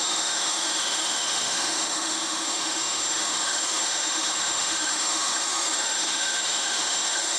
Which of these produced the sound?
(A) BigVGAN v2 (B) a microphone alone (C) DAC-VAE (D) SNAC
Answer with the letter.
C